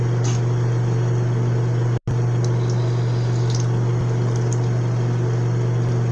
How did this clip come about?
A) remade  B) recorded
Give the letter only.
B